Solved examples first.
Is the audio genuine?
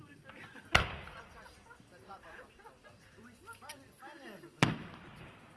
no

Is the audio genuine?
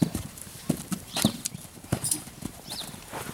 no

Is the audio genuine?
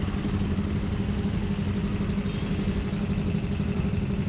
yes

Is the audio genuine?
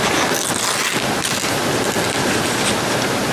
yes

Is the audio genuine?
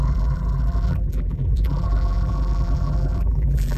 no